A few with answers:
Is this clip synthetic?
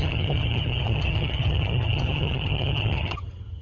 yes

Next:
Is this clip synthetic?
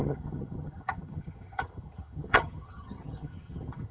yes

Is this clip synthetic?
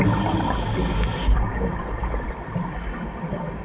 no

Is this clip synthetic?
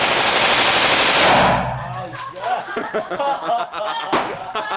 no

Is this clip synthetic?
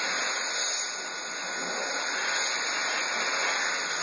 no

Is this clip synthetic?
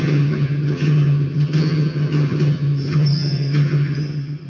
yes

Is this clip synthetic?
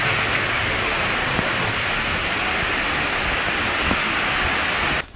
no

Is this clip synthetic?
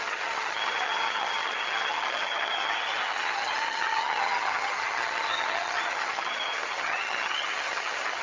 yes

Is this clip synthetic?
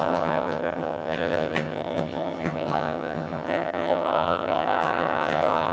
yes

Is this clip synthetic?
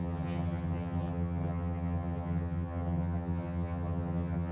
yes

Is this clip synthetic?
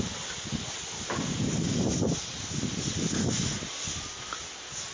no